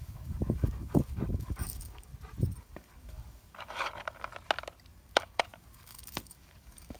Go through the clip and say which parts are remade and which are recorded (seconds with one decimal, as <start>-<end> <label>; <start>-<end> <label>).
0.0-2.1 remade; 2.1-2.6 recorded; 2.6-4.3 remade; 4.3-4.9 recorded; 4.9-7.0 remade